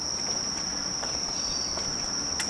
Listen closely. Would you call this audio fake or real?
real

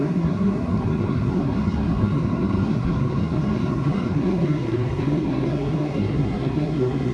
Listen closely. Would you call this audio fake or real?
fake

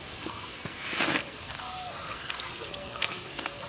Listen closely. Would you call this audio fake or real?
fake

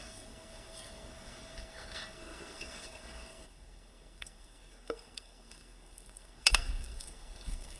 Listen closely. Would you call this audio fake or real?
fake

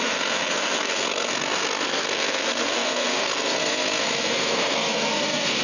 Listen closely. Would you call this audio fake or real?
fake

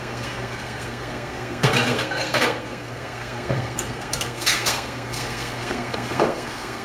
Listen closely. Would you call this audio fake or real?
fake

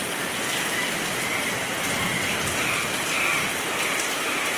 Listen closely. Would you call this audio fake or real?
real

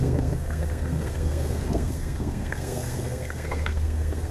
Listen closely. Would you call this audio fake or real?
fake